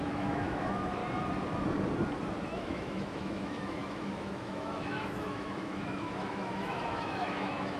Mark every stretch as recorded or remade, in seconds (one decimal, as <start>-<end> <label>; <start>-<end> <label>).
0.0-1.0 remade; 1.0-2.4 recorded; 2.4-7.8 remade